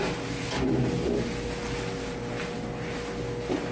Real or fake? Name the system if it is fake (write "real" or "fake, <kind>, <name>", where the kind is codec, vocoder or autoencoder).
real